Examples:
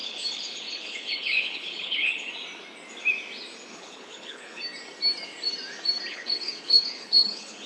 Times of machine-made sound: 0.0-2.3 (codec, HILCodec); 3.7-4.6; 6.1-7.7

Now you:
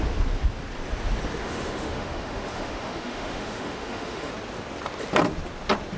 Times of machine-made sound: 1.4-4.3 (autoencoder, DAC-VAE)

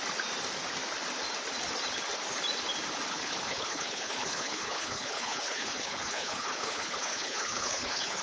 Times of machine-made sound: 3.1-8.2 (codec, HILCodec)

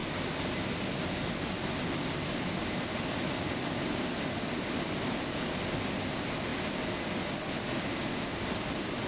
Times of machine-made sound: none